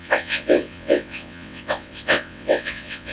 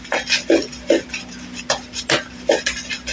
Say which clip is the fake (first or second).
first